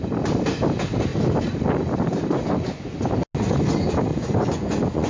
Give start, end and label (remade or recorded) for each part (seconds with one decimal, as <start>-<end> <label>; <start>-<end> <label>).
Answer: 0.0-4.1 recorded; 4.1-5.1 remade